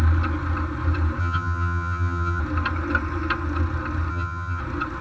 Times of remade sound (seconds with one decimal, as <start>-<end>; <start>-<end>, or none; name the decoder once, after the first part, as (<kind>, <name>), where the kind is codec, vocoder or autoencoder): 1.2-2.4 (vocoder, HiFi-GAN); 4.1-4.6